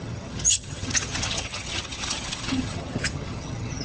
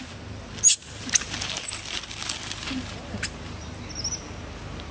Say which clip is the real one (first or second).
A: second